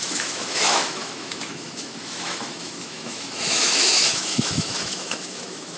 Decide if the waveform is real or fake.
fake